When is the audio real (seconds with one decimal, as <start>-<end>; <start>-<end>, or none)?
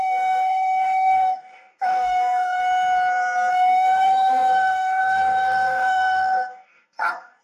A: 2.6-3.5